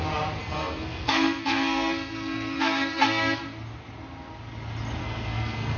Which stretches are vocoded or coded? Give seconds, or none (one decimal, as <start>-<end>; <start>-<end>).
0.4-3.4; 5.0-5.8